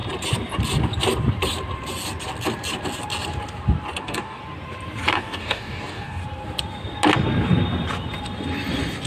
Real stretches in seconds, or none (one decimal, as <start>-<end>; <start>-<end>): 0.0-4.0; 4.4-5.1; 6.2-9.1